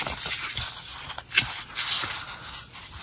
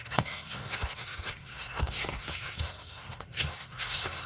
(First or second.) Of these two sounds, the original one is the first